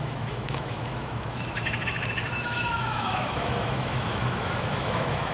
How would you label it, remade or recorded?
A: remade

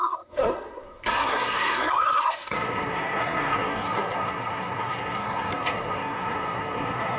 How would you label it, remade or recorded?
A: remade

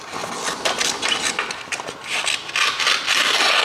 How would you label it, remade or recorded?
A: recorded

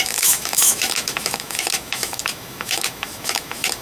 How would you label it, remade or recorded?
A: remade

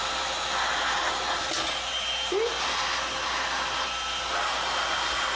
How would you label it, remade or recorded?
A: recorded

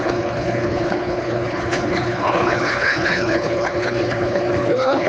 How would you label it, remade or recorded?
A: remade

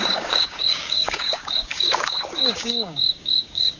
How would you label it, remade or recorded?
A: remade